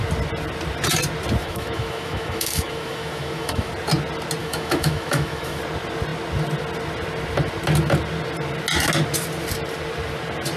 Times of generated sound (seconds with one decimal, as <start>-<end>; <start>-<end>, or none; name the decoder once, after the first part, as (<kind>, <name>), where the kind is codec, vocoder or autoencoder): 1.4-3.7 (autoencoder, DAC-VAE); 4.4-5.6